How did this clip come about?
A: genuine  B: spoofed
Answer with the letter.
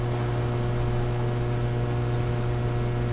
A